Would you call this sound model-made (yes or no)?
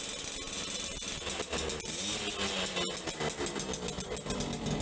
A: no